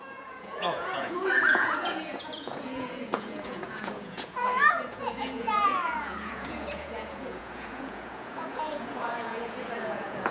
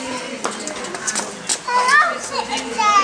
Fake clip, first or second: first